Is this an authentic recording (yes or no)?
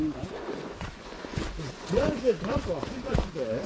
no